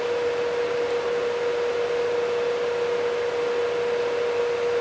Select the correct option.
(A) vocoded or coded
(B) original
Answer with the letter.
B